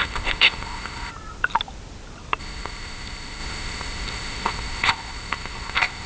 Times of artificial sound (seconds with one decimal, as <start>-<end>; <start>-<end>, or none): 0.0-1.1; 2.4-6.1